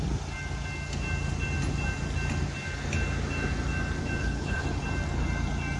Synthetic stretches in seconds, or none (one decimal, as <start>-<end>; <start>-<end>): 4.2-4.8